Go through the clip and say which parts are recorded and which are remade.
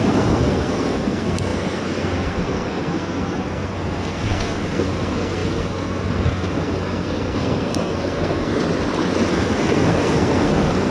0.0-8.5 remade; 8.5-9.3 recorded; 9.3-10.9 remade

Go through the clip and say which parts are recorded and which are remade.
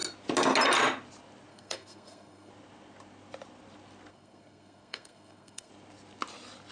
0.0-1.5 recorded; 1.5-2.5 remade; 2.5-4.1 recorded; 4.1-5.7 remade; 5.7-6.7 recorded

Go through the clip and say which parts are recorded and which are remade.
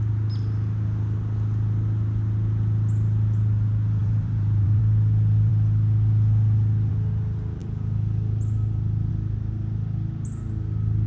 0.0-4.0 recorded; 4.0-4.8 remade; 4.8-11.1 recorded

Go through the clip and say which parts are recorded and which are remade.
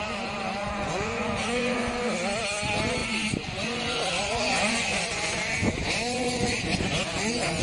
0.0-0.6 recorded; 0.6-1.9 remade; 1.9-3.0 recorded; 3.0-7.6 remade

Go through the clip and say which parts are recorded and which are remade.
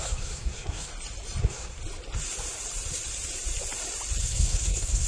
0.0-0.9 remade; 0.9-1.4 recorded; 1.4-1.8 remade; 1.8-4.2 recorded; 4.2-5.1 remade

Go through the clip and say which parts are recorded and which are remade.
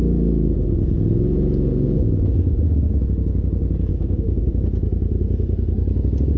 0.0-1.7 recorded; 1.7-2.9 remade; 2.9-3.9 recorded; 3.9-4.5 remade; 4.5-6.4 recorded